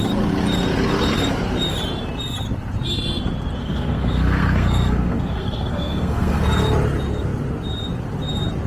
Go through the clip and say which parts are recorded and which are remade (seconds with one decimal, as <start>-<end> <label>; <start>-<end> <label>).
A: 0.0-3.6 recorded; 3.6-6.4 remade; 6.4-8.7 recorded